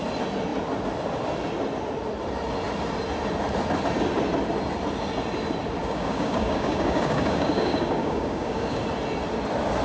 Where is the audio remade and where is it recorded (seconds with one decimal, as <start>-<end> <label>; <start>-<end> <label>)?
0.0-5.8 recorded; 5.8-8.8 remade; 8.8-9.8 recorded

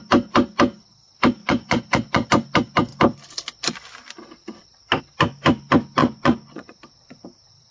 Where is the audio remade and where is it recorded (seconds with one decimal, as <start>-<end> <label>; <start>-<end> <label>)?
0.0-1.4 recorded; 1.4-2.3 remade; 2.3-6.0 recorded; 6.0-6.8 remade; 6.8-7.7 recorded

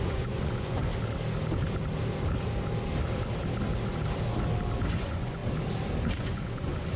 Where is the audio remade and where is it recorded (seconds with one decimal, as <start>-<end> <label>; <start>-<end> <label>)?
0.0-0.9 remade; 0.9-4.9 recorded; 4.9-5.4 remade; 5.4-6.2 recorded; 6.2-7.0 remade

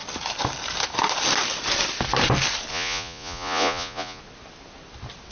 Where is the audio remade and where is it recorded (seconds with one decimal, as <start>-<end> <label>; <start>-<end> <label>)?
0.0-2.7 recorded; 2.7-4.2 remade; 4.2-5.3 recorded